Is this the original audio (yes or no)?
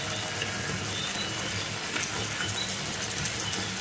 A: yes